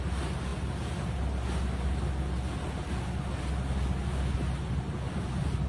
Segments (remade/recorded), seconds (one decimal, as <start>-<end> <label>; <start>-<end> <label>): 0.0-5.7 recorded